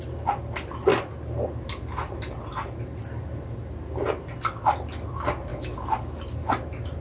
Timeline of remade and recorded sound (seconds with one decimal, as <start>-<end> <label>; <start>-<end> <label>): 0.0-5.5 recorded; 5.5-6.5 remade; 6.5-7.0 recorded